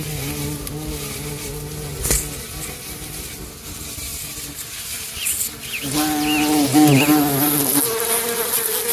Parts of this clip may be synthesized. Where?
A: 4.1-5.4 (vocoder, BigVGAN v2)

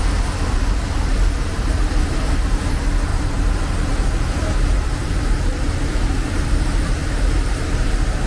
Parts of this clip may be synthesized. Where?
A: 0.0-8.3 (vocoder, BigVGAN v2)

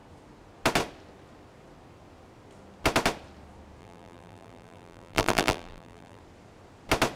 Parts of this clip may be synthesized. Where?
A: 3.8-6.2 (vocoder, BigVGAN v2)